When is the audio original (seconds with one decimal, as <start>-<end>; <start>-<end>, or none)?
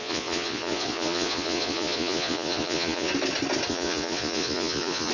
3.1-3.7